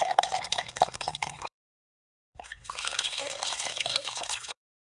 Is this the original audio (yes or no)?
no